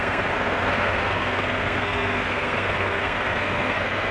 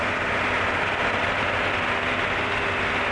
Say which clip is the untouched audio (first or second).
second